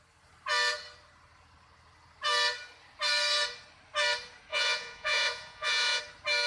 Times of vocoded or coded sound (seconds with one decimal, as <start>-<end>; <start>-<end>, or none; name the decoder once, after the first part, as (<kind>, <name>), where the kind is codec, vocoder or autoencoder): 4.5-6.0 (vocoder, Vocos)